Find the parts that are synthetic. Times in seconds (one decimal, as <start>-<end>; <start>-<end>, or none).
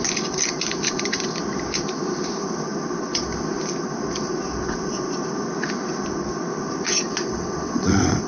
7.3-8.3